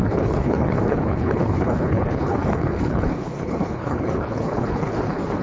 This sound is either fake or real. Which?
fake